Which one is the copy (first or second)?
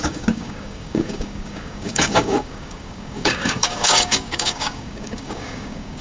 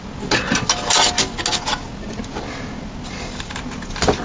first